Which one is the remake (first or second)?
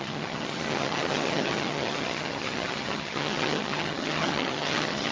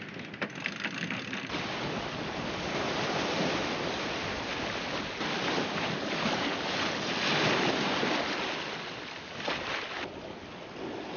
first